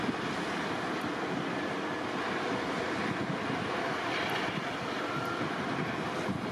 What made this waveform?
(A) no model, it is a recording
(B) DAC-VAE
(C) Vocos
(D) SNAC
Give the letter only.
A